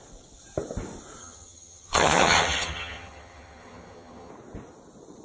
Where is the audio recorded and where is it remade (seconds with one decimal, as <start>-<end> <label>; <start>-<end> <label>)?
0.0-1.2 recorded; 1.2-4.3 remade; 4.3-5.2 recorded